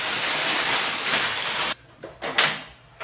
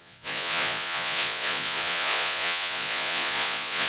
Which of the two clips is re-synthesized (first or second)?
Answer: second